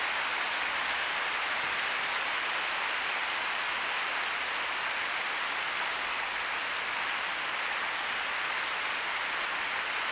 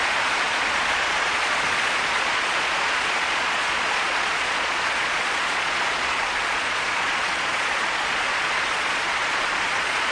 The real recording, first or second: first